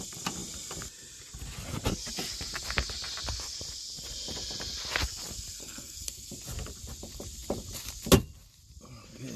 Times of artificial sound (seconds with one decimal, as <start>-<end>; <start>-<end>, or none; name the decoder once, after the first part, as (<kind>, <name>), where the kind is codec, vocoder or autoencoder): 5.6-6.3 (codec, SNAC)

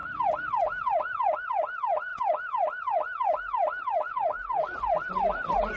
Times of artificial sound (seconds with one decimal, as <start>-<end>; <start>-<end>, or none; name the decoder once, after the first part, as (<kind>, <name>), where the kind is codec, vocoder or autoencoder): none

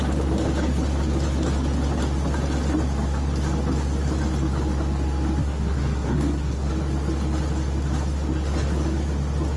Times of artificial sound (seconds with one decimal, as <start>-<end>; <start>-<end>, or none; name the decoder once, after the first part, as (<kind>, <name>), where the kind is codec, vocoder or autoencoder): 5.4-6.7 (codec, SNAC)

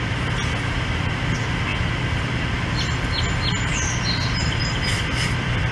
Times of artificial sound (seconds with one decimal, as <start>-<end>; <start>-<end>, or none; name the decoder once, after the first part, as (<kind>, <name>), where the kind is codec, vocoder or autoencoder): 4.4-5.7 (vocoder, BigVGAN v2)

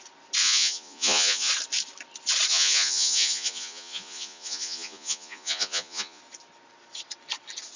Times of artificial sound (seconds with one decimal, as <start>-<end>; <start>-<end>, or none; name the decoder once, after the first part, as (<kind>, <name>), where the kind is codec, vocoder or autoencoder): 0.4-1.5 (vocoder, Vocos); 2.5-6.2

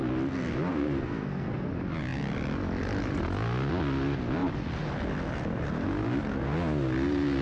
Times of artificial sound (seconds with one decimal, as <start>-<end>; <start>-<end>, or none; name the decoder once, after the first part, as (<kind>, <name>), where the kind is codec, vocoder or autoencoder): 0.7-1.7 (codec, SNAC)

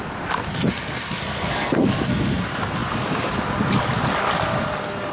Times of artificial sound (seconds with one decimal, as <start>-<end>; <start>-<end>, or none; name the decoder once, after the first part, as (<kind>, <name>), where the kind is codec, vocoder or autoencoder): 0.5-2.4 (codec, SNAC)

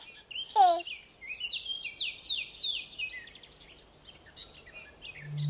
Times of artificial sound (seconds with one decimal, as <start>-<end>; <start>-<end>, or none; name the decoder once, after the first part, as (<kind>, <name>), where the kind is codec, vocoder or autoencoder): none